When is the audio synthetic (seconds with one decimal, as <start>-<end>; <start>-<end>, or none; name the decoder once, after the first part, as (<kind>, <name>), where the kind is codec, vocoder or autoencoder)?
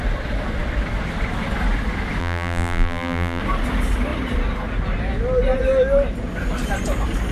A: 2.2-3.4 (vocoder, BigVGAN v2)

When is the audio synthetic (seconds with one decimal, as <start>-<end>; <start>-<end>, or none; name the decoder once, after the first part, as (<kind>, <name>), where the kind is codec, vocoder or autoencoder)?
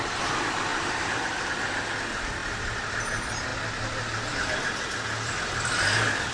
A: 0.7-1.5 (vocoder, BigVGAN v2)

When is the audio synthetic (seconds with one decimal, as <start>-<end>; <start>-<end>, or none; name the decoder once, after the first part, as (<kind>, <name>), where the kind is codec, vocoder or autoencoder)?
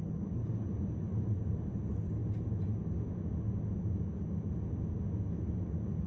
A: 0.4-1.5 (vocoder, BigVGAN v2); 2.2-2.8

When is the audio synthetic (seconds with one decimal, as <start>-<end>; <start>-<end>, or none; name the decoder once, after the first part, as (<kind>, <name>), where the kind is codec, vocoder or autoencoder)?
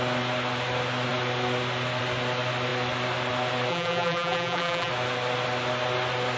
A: 3.7-4.9 (vocoder, BigVGAN v2)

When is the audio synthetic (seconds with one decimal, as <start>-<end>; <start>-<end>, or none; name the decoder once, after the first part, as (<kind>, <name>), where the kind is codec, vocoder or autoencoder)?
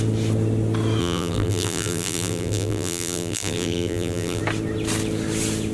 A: 1.0-4.4 (vocoder, BigVGAN v2)